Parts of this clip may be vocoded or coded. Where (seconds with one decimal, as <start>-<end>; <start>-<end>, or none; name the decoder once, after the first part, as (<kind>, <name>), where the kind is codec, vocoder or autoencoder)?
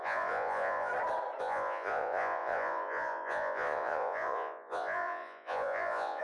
0.0-0.9 (vocoder, Vocos); 1.4-6.2